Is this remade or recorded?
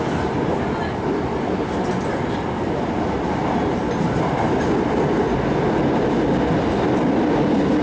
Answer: recorded